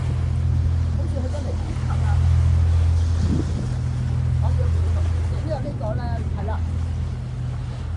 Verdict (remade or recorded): recorded